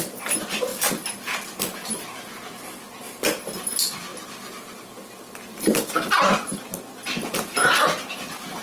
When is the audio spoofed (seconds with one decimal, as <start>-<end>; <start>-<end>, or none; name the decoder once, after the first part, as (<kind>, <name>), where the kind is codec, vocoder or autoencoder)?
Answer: none